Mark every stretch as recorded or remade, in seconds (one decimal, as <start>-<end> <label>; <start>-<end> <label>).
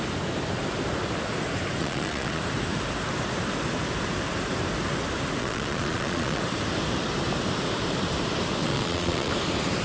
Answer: 0.0-1.8 recorded; 1.8-2.4 remade; 2.4-5.4 recorded; 5.4-6.4 remade; 6.4-8.6 recorded; 8.6-9.3 remade; 9.3-9.8 recorded